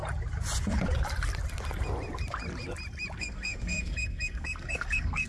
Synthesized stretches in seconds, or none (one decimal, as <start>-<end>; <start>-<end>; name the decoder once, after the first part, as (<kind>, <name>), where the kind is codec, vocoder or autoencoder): 3.2-5.3 (codec, SNAC)